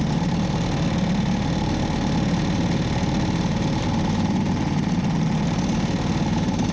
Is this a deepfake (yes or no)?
no